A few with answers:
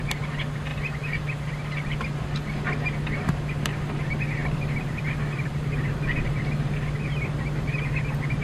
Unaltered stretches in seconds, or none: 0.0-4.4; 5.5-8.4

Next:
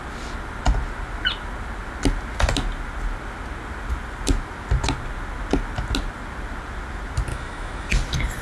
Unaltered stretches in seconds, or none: 0.0-7.3; 7.9-8.4

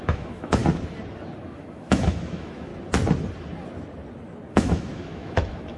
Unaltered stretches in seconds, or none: 0.6-1.4; 2.7-4.5

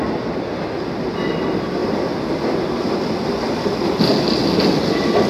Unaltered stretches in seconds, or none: 0.0-5.3